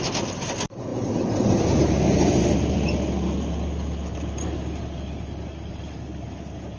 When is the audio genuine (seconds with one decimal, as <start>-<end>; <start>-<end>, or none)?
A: 0.0-6.8